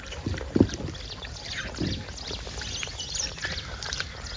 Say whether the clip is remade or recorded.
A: recorded